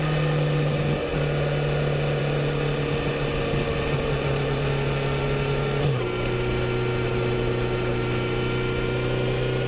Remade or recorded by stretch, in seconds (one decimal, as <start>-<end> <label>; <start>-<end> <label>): 0.0-9.7 recorded